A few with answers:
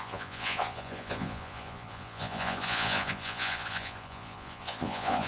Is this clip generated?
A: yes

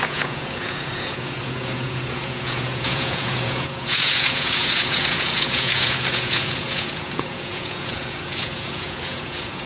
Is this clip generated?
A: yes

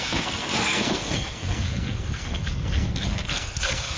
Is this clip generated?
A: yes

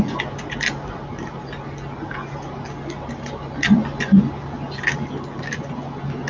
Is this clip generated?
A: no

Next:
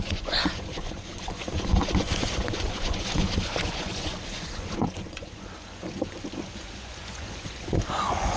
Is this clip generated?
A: yes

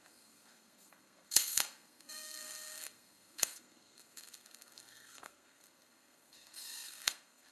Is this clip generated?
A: yes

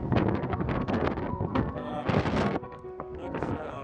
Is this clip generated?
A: yes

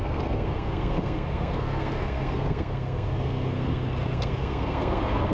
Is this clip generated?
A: yes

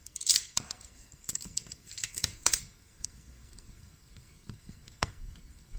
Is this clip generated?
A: yes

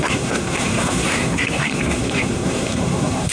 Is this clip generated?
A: yes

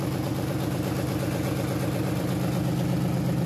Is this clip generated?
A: no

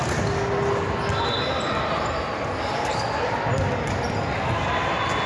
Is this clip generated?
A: no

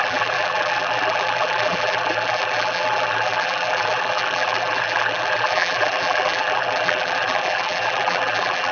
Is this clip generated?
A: yes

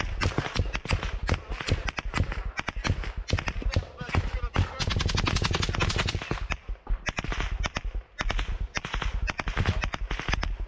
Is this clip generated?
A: no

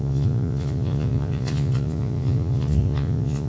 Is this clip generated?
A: yes